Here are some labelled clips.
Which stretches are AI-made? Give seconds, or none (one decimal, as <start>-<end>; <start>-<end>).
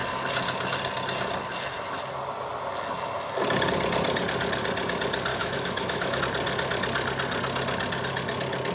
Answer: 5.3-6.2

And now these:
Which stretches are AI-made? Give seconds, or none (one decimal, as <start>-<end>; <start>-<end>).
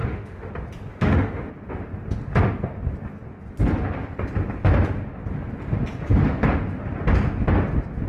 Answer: 0.0-0.5; 0.9-1.5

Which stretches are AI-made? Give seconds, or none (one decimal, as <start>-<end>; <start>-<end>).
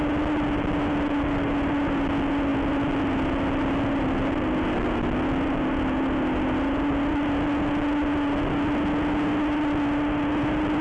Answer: none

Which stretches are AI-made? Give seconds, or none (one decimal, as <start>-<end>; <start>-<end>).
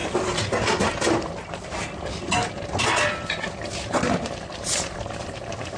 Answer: none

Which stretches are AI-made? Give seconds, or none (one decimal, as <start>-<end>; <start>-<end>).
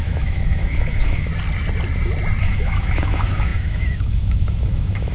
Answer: 0.0-1.3; 2.4-5.1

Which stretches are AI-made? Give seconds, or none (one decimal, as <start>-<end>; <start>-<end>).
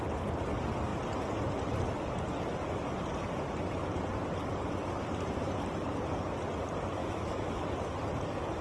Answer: 7.0-7.7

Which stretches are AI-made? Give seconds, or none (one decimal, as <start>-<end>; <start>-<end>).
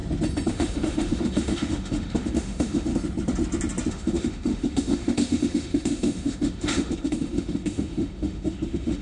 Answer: 0.5-2.9; 3.9-9.0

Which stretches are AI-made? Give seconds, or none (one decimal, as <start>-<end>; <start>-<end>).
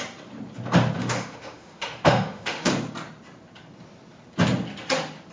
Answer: 1.0-2.7